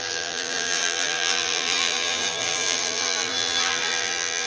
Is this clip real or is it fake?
fake